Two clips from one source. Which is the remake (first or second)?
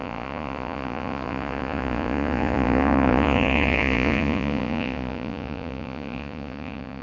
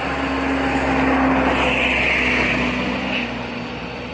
first